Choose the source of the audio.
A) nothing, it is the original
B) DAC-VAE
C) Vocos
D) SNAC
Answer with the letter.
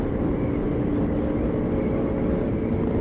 A